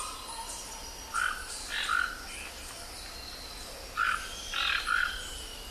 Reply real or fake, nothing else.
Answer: real